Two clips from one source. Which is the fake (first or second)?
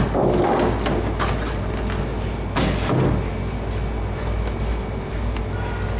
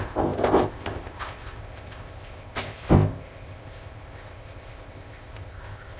second